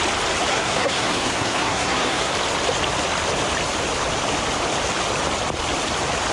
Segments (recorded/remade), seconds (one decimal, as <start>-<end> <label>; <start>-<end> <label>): 0.0-0.5 recorded; 0.5-2.3 remade; 2.3-6.3 recorded